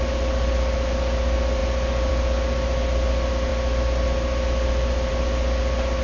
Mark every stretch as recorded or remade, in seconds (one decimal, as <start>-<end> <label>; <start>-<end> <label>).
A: 0.0-6.0 recorded